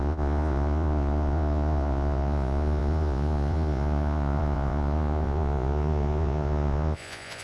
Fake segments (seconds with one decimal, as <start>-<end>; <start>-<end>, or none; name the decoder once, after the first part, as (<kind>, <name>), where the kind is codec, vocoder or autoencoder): 0.0-7.4 (vocoder, Vocos)